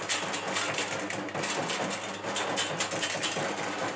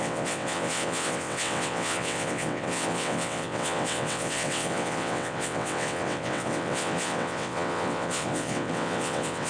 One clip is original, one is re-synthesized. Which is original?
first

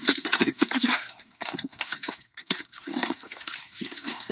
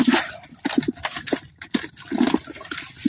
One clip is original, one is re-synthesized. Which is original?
second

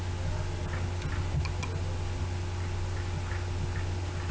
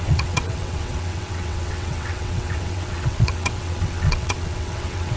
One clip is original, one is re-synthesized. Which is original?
first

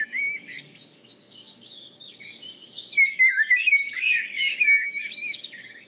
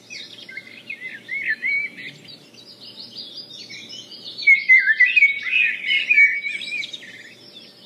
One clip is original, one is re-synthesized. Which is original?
second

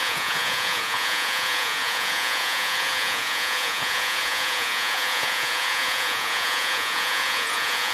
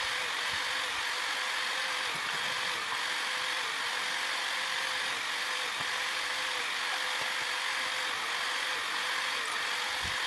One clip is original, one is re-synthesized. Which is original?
second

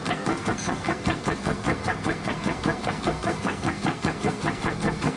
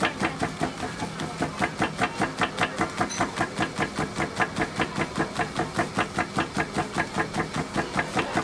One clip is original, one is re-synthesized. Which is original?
second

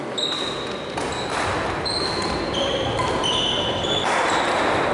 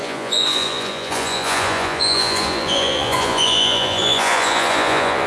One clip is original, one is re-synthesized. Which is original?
first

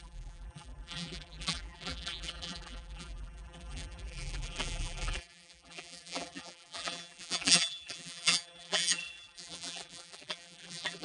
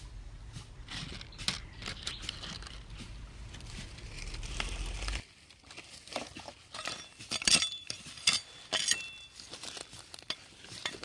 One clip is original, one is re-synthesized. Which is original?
second